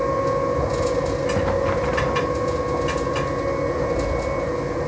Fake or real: real